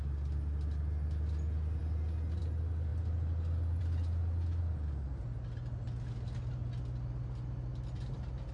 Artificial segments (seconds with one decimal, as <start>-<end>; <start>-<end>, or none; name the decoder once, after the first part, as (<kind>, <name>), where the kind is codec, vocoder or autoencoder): none